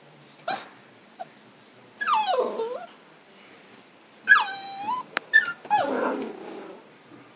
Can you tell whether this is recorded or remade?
recorded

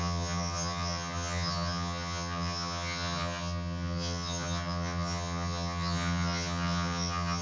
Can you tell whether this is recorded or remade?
remade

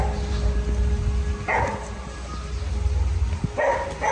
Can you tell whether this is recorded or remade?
recorded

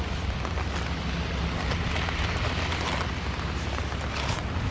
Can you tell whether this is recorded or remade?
recorded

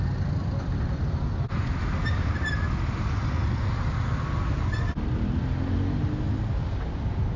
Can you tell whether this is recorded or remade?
recorded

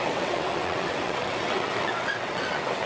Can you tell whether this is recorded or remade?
remade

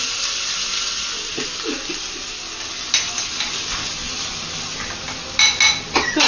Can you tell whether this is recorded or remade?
recorded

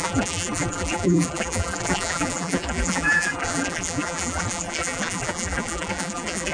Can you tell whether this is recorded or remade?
remade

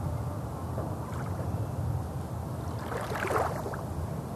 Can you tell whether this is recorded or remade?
recorded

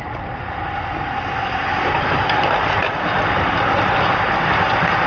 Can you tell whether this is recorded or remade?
recorded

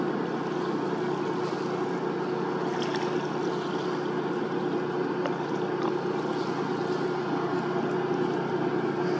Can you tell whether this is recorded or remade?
recorded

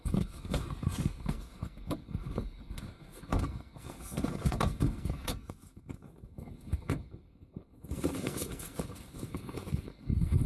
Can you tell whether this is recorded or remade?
remade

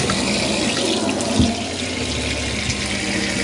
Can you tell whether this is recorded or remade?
recorded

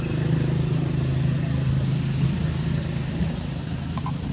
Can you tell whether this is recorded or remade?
recorded